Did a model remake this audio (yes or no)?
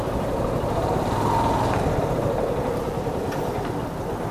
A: no